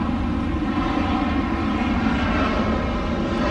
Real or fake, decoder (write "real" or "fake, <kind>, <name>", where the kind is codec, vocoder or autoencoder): real